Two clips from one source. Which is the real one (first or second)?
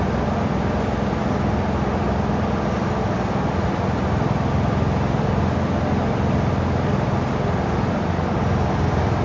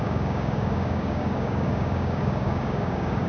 first